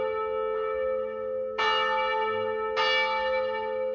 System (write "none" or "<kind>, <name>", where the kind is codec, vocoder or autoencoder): none